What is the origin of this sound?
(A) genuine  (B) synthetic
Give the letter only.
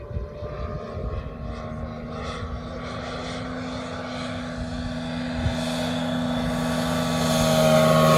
A